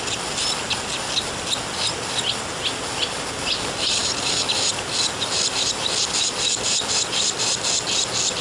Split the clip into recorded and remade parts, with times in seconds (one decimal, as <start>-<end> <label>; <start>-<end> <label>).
0.0-8.4 recorded